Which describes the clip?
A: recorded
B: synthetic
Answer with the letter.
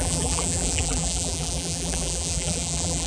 B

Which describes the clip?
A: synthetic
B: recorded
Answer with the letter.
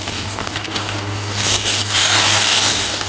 A